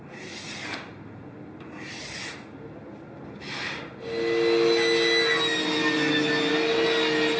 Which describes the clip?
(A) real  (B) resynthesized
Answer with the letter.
A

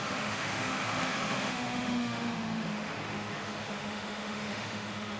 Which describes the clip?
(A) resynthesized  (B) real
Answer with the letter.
A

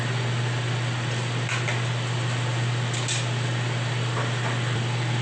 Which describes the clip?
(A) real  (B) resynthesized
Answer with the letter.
A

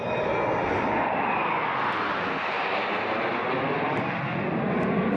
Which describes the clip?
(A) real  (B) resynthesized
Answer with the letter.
A